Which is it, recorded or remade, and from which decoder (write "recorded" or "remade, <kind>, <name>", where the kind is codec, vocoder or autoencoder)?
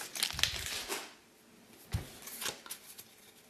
recorded